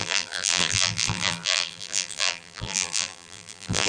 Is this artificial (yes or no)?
yes